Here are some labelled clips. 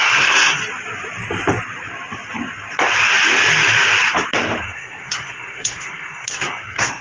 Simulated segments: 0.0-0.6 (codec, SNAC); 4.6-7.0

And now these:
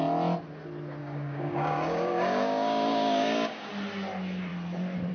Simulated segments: 1.0-3.7 (codec, DAC)

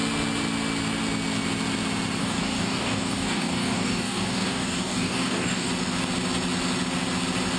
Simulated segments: 2.2-5.7 (codec, DAC)

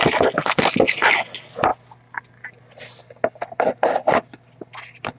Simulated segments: none

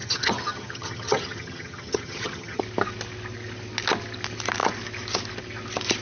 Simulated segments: 0.0-2.6 (vocoder, HiFi-GAN)